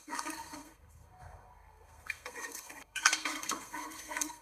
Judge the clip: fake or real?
fake